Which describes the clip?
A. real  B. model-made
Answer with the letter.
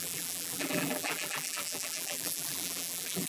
B